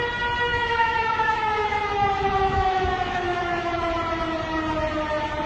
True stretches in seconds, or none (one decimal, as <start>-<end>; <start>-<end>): 0.0-0.5; 3.8-5.5